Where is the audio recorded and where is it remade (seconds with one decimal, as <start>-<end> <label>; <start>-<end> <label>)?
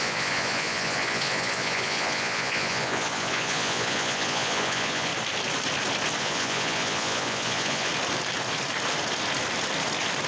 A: 0.0-5.1 remade; 5.1-6.2 recorded; 6.2-7.9 remade; 7.9-10.3 recorded